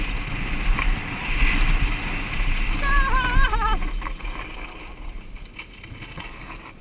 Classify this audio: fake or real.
real